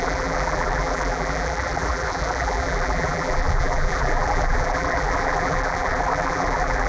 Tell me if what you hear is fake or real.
fake